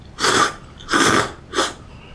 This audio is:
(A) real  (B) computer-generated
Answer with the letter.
A